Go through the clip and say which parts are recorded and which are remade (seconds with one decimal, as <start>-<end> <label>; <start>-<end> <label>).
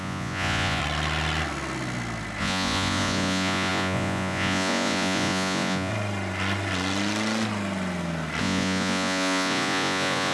0.0-0.8 remade; 0.8-2.4 recorded; 2.4-5.9 remade; 5.9-8.4 recorded; 8.4-10.3 remade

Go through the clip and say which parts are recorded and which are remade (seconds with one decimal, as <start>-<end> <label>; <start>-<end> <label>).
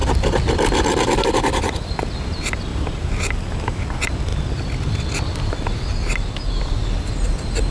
0.0-2.7 recorded; 2.7-3.8 remade; 3.8-7.7 recorded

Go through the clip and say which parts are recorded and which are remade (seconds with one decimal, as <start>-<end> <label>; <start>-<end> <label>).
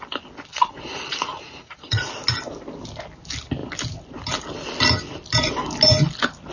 0.0-0.5 recorded; 0.5-2.1 remade; 2.1-6.5 recorded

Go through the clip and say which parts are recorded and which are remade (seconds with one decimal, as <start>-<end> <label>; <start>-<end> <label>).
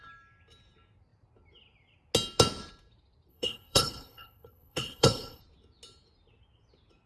0.0-3.3 recorded; 3.3-5.4 remade; 5.4-7.1 recorded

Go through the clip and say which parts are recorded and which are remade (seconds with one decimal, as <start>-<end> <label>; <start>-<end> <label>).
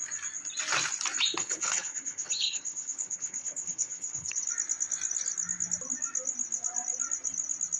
0.0-1.4 recorded; 1.4-4.5 remade; 4.5-7.8 recorded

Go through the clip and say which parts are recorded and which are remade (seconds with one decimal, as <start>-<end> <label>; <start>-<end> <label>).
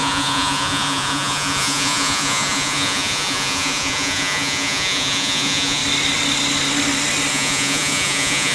0.0-5.8 remade; 5.8-7.3 recorded; 7.3-8.5 remade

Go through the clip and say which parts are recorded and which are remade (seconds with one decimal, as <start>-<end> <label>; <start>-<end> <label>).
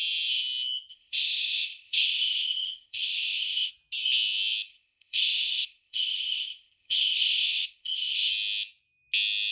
0.0-0.9 recorded; 0.9-3.7 remade; 3.7-4.7 recorded; 4.7-8.3 remade; 8.3-9.5 recorded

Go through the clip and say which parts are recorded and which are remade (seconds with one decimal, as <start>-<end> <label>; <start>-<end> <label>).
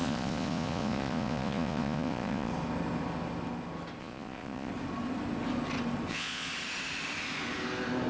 0.0-2.5 remade; 2.5-4.0 recorded; 4.0-4.7 remade; 4.7-6.1 recorded; 6.1-6.5 remade; 6.5-8.1 recorded